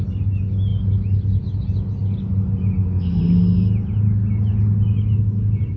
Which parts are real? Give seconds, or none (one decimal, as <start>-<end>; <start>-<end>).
0.0-5.8